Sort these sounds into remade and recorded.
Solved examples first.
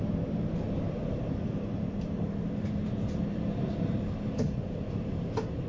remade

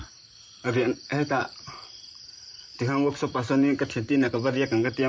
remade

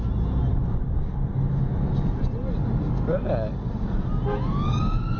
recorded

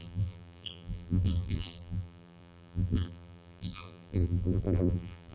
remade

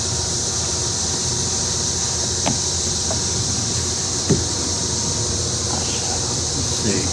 remade